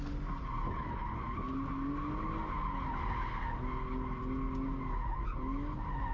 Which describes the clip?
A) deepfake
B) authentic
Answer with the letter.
B